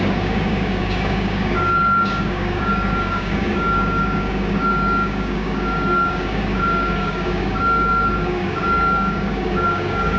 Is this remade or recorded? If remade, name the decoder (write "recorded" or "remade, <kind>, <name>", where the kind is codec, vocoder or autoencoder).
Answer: remade, codec, DAC